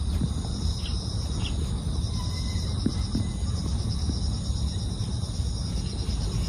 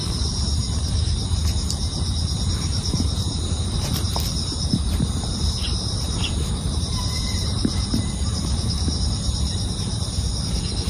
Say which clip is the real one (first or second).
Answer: first